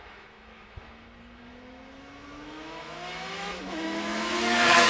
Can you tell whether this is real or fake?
fake